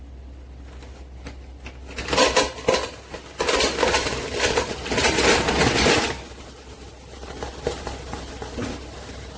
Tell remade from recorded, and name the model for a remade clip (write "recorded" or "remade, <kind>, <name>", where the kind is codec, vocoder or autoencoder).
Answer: recorded